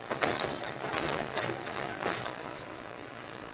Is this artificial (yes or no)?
yes